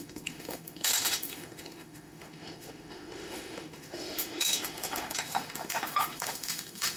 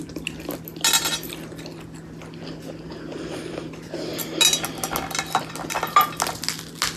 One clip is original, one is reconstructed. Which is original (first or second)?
second